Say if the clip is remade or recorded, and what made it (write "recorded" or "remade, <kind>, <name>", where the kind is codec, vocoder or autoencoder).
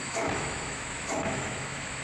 remade, autoencoder, DAC-VAE